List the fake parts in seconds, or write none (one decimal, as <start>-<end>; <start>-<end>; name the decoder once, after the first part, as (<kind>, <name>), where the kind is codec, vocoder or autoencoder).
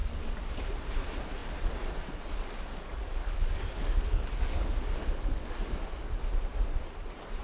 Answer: 0.0-0.6 (codec, DAC); 2.9-5.6